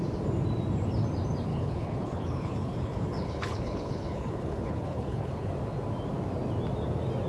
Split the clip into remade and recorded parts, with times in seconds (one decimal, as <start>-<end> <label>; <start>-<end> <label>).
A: 0.0-1.5 recorded; 1.5-5.5 remade; 5.5-7.3 recorded